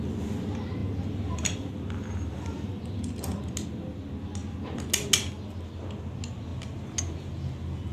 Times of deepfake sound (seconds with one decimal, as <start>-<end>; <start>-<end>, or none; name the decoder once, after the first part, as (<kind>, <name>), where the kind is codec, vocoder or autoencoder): 0.8-3.4 (vocoder, BigVGAN v2)